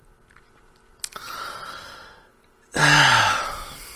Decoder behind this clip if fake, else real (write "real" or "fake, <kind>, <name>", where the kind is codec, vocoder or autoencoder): real